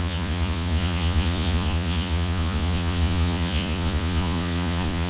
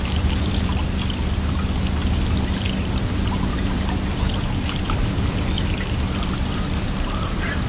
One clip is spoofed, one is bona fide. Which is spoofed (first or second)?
first